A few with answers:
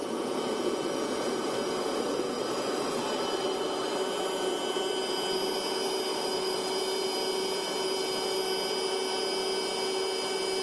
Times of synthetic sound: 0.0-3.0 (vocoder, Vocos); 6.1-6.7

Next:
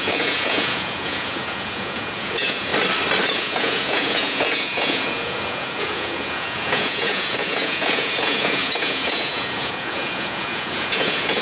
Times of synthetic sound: 0.0-2.7 (vocoder, Vocos); 3.3-11.4

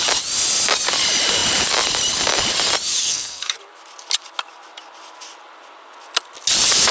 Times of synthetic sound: 3.0-3.6 (codec, SNAC)

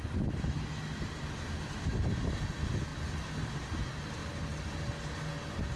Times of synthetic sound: none

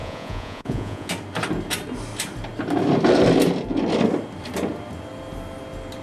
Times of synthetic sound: 0.0-1.1 (vocoder, Vocos)

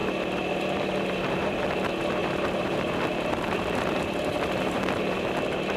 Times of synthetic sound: 0.0-1.6 (vocoder, BigVGAN v2); 2.2-5.8

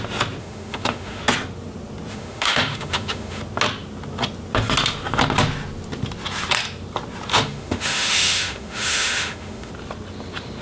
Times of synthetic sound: 0.4-1.2 (autoencoder, DAC-VAE); 2.1-3.4; 7.3-9.7

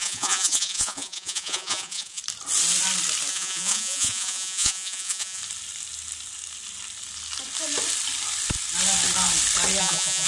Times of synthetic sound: 0.0-2.2 (vocoder, Vocos); 3.3-5.4; 9.8-10.3